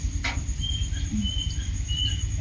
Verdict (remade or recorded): recorded